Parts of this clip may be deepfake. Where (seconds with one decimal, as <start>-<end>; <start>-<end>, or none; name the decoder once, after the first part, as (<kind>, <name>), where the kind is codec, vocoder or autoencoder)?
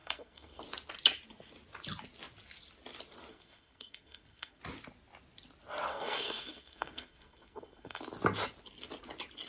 0.0-0.6 (codec, SNAC); 3.3-4.6; 5.9-8.0